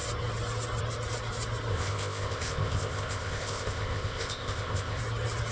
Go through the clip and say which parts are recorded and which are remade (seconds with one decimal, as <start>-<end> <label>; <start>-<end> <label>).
0.0-1.7 recorded; 1.7-5.0 remade; 5.0-5.5 recorded